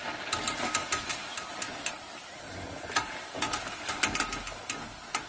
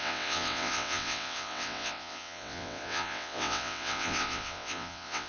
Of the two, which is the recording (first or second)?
first